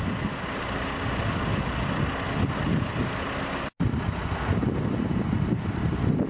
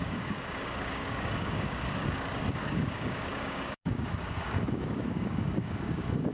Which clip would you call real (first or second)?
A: first